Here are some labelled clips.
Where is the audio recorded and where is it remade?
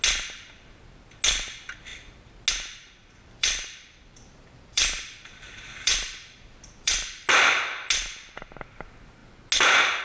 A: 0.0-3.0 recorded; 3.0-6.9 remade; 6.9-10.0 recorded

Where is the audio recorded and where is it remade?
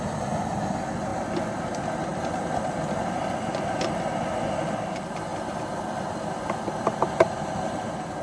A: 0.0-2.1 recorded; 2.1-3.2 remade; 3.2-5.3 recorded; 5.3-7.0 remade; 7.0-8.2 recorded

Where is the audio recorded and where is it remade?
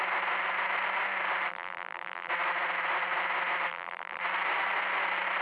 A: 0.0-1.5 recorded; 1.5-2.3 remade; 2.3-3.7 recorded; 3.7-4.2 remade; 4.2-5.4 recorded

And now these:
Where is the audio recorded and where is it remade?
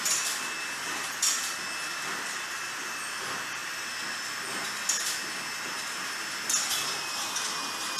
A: 0.0-8.0 recorded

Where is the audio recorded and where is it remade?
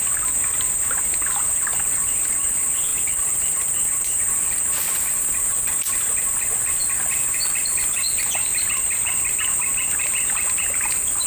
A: 0.0-11.3 recorded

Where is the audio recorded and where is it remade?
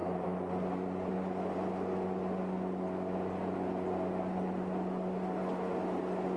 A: 0.0-6.4 recorded